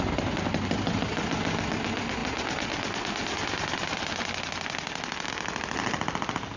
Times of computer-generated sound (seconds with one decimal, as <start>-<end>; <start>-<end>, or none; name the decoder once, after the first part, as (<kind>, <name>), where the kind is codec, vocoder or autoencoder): none